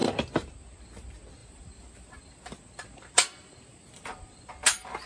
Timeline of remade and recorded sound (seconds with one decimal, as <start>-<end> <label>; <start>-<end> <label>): 0.0-1.4 recorded; 1.4-4.5 remade; 4.5-5.1 recorded